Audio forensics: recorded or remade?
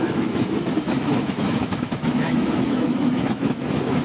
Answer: remade